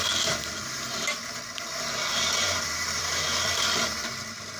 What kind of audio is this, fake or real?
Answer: fake